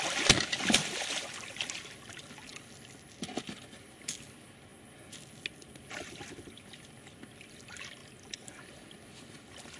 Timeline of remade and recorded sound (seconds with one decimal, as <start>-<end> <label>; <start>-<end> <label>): 0.0-9.8 recorded